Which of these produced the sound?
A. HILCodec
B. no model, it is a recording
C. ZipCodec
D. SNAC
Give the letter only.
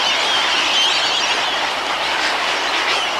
B